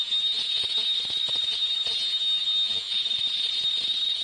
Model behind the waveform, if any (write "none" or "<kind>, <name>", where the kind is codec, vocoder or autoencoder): none